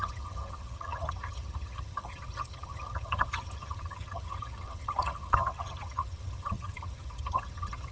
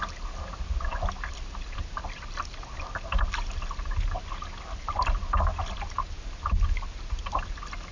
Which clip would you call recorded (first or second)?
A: second